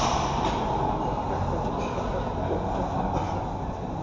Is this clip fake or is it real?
real